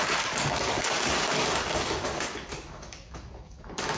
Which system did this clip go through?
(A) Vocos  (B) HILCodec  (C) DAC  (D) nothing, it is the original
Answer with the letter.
C